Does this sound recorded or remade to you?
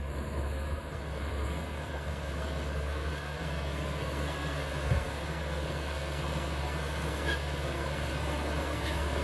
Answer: remade